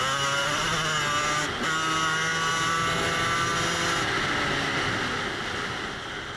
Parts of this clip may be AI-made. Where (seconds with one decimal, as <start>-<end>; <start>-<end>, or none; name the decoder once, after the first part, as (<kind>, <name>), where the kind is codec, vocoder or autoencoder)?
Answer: none